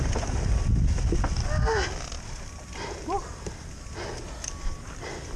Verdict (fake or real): real